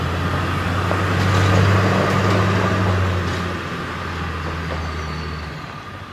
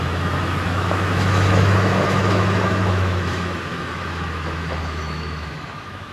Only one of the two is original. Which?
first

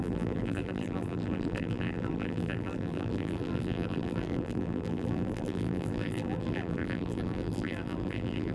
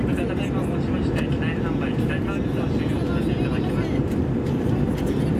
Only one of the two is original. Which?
second